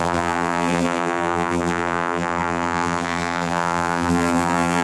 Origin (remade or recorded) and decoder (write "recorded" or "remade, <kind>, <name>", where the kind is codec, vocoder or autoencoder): remade, vocoder, BigVGAN v2